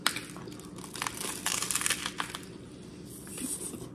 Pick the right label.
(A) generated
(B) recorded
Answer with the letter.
B